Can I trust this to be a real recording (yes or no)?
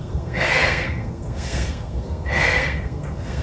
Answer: no